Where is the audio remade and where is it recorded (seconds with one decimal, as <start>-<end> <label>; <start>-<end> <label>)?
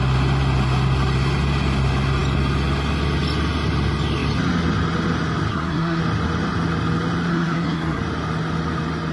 0.0-5.5 recorded; 5.5-6.0 remade; 6.0-7.3 recorded; 7.3-8.0 remade; 8.0-9.1 recorded